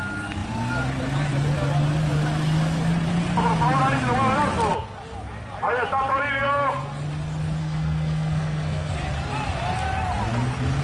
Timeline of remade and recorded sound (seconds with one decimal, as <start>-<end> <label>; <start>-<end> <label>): 0.0-7.6 recorded; 7.6-8.9 remade; 8.9-10.8 recorded

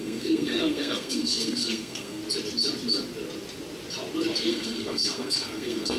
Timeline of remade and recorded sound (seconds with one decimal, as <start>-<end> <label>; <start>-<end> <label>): 0.0-2.2 remade; 2.2-4.5 recorded; 4.5-6.0 remade